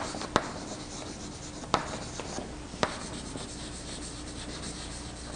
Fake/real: fake